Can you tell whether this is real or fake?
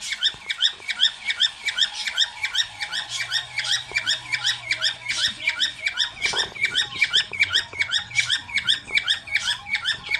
fake